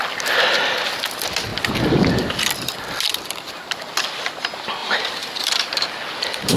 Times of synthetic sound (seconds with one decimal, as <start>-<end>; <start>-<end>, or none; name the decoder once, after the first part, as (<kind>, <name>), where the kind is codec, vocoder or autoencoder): 4.8-6.6 (vocoder, BigVGAN v2)